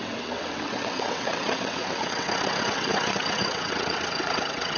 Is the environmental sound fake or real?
fake